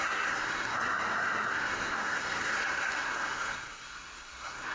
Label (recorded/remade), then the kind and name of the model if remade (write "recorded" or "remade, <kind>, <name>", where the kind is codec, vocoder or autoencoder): remade, codec, SNAC